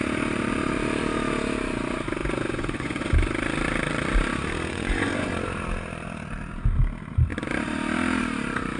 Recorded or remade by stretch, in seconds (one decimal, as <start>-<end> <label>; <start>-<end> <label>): 0.0-2.2 recorded; 2.2-3.0 remade; 3.0-4.7 recorded; 4.7-5.3 remade; 5.3-8.8 recorded